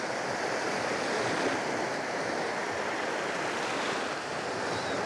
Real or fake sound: real